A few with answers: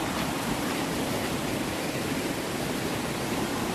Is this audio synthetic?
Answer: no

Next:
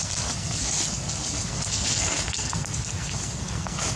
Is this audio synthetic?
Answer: yes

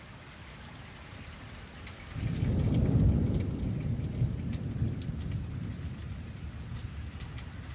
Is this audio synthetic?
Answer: no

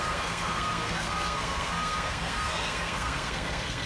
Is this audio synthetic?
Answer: yes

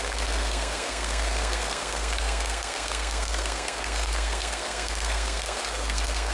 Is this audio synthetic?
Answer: yes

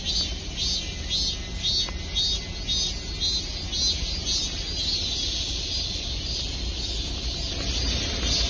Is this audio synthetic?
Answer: no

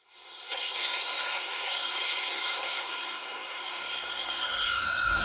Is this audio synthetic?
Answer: yes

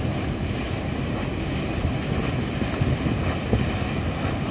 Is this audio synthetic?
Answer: no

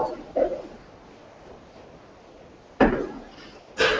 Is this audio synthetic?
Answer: no